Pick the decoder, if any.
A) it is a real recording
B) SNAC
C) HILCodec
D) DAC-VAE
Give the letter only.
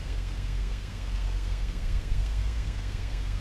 B